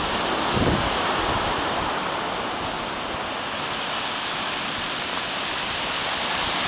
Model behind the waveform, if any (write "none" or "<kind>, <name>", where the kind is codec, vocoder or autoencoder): none